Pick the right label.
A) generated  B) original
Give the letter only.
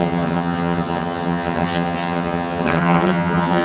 A